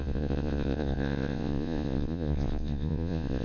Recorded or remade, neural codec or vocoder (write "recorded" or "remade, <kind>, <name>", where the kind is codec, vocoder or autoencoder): remade, vocoder, Vocos